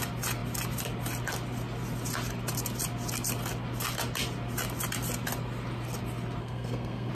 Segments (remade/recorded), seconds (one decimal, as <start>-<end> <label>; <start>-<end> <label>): 0.0-6.4 recorded; 6.4-7.1 remade